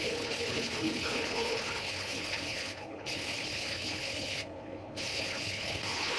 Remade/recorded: remade